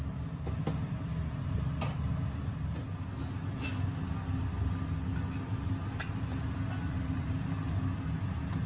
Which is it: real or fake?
real